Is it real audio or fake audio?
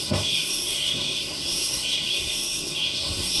fake